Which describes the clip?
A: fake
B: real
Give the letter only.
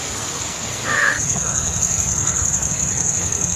A